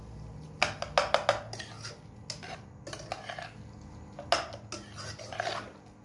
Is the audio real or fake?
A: real